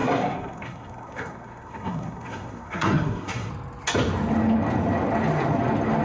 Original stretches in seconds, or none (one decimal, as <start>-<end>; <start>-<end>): 3.5-6.0